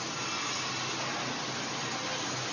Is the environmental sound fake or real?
real